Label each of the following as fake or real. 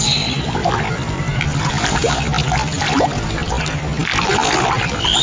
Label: real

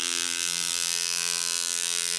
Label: fake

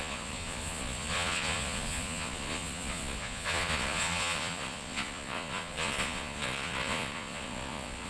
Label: fake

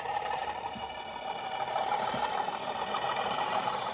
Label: fake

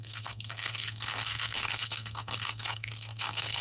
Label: fake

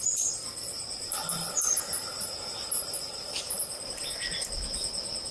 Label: real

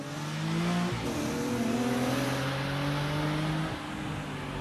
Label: real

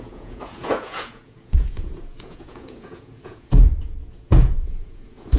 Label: fake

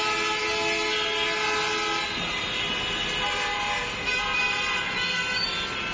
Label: real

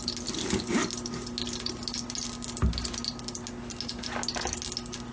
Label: real